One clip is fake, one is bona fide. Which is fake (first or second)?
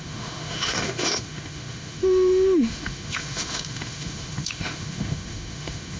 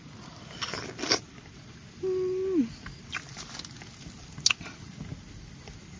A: first